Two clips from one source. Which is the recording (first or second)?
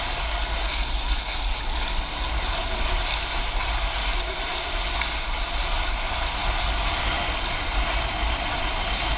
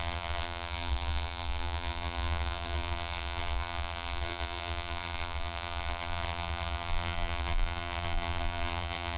first